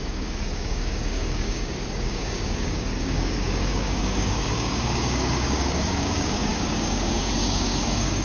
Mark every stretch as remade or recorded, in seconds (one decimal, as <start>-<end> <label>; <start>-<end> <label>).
0.0-8.2 remade